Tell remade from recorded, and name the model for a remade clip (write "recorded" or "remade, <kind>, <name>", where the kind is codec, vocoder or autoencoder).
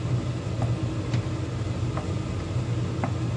recorded